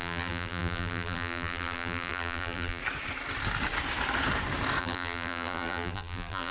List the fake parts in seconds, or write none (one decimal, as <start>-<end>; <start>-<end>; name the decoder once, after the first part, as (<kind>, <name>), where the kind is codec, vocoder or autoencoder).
0.0-2.8 (vocoder, BigVGAN v2); 4.8-6.5

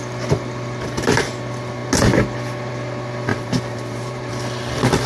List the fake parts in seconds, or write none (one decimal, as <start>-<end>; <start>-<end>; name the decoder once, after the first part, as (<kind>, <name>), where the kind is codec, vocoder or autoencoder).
3.3-4.3 (vocoder, BigVGAN v2)

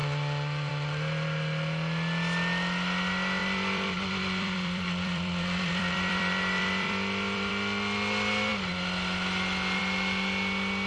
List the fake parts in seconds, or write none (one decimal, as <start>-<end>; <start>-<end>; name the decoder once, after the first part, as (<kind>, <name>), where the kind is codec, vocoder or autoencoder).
3.4-7.5 (vocoder, BigVGAN v2)

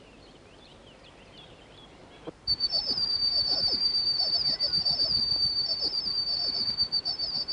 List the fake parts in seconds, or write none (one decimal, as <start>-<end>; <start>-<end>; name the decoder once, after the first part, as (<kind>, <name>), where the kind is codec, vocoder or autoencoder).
0.0-7.5 (vocoder, BigVGAN v2)

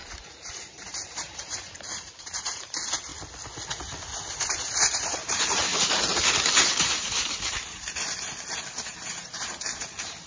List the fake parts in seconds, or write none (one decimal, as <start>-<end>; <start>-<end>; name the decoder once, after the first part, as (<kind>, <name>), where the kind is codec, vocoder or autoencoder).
0.0-3.1 (vocoder, BigVGAN v2); 4.3-5.7; 6.8-10.3